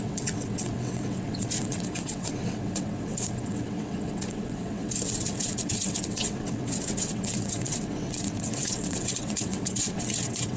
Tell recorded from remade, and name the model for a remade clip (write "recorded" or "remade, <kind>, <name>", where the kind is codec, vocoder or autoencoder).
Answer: remade, vocoder, WaveNeXt